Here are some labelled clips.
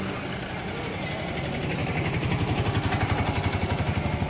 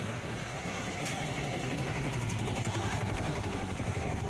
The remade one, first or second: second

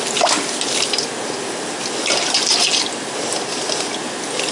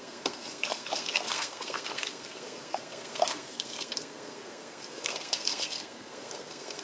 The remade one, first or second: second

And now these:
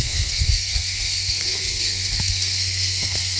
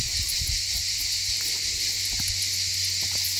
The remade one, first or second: first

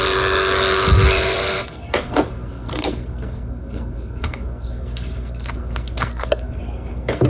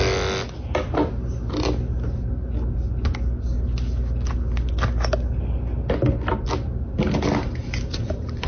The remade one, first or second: first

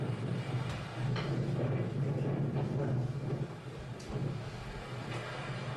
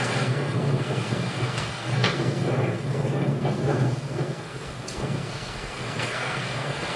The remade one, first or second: second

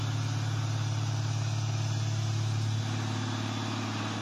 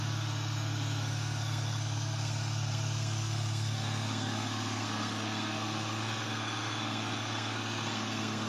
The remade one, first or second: second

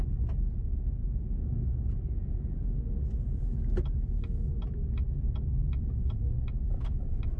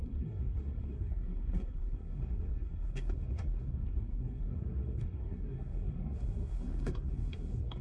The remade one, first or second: second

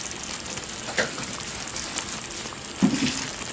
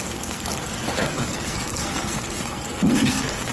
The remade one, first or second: second